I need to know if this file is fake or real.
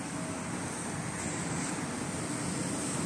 real